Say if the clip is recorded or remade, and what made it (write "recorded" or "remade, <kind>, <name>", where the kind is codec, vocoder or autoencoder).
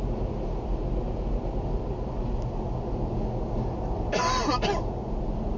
recorded